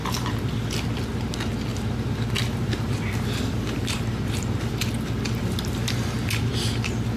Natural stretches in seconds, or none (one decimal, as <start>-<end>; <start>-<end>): 1.0-1.7; 5.1-7.2